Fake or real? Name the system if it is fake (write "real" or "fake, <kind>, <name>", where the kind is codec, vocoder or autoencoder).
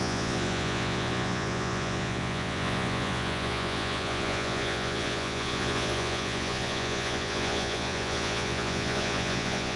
fake, vocoder, Vocos